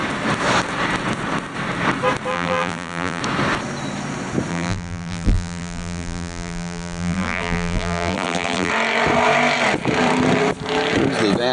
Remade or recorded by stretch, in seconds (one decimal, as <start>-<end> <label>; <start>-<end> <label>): 0.0-2.3 recorded; 2.3-3.2 remade; 3.2-4.5 recorded; 4.5-8.7 remade; 8.7-11.5 recorded

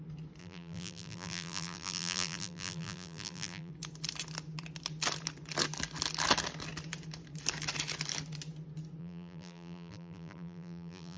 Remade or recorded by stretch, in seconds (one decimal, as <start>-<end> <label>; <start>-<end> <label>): 0.0-0.4 recorded; 0.4-3.7 remade; 3.7-9.0 recorded; 9.0-11.2 remade

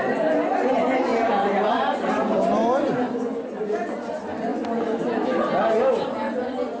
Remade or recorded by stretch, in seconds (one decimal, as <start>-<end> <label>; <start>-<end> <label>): 0.0-1.1 recorded; 1.1-2.7 remade; 2.7-6.8 recorded

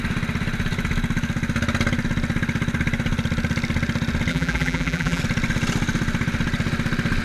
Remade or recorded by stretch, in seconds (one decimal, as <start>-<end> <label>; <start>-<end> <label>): 0.0-4.3 recorded; 4.3-5.2 remade; 5.2-7.2 recorded

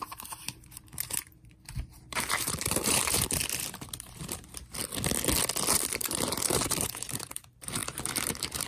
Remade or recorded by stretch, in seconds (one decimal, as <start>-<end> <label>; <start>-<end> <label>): 0.0-4.8 remade; 4.8-5.7 recorded; 5.7-8.7 remade

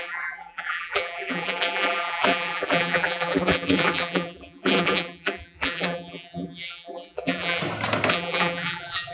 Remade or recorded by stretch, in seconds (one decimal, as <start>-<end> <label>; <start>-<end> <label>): 0.0-7.6 remade; 7.6-8.1 recorded; 8.1-9.1 remade